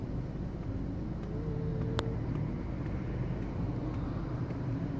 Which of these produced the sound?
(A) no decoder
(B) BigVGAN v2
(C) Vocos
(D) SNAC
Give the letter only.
A